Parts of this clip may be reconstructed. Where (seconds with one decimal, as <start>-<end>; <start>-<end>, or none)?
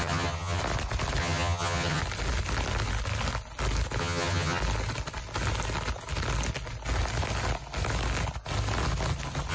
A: 0.0-0.6; 1.2-2.0; 4.0-4.6